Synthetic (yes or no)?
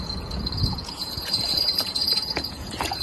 yes